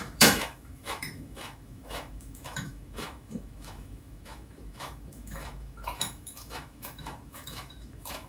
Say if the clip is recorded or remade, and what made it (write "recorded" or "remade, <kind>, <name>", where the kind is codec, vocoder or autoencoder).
remade, autoencoder, DAC-VAE